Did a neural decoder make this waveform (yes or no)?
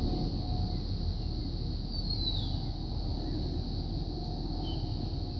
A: no